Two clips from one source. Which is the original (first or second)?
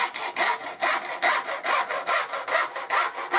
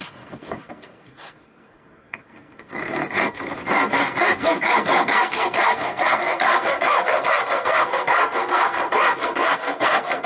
first